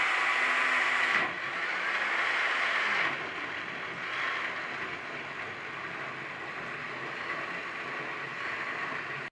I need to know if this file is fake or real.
real